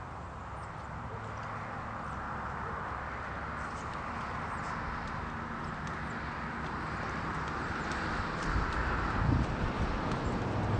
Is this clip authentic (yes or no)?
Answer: yes